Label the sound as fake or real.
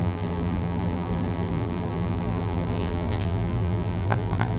fake